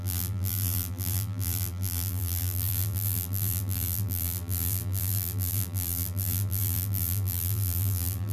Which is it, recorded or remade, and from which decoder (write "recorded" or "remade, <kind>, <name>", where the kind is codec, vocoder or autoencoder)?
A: remade, vocoder, BigVGAN v2